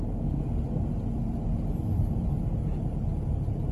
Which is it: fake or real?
real